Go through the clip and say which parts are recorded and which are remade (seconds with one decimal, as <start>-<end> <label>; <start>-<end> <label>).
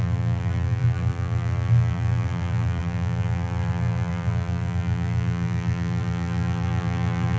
0.0-7.4 remade